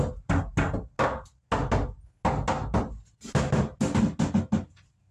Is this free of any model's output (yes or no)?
yes